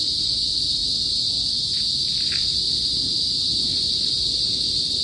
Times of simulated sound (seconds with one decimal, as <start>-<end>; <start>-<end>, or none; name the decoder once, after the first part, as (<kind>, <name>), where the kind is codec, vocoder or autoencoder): none